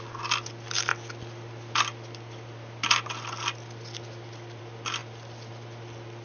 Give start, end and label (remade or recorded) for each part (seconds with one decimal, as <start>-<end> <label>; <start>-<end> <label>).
0.0-6.2 recorded

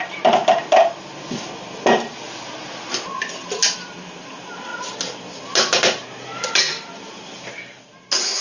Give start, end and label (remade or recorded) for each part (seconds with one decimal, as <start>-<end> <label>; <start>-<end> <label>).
0.0-8.4 recorded